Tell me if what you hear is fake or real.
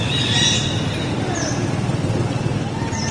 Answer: real